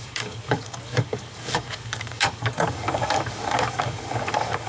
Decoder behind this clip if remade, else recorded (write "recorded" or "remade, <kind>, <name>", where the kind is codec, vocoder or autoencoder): remade, codec, DAC